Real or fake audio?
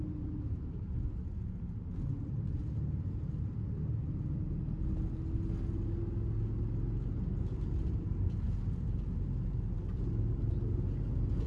real